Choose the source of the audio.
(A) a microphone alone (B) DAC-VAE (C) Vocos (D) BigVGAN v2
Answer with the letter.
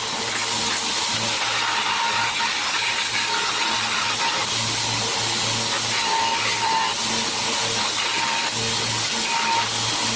A